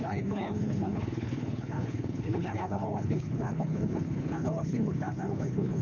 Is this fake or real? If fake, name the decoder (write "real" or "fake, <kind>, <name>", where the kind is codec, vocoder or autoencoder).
fake, codec, HILCodec